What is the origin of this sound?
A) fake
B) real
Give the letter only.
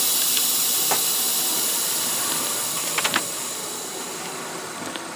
B